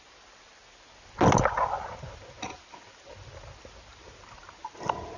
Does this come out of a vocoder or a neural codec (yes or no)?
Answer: no